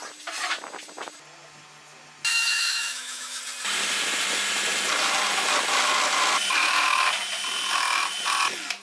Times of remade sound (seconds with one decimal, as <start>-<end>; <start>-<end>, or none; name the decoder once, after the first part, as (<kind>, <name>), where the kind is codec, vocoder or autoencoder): 2.3-3.4 (autoencoder, DAC-VAE)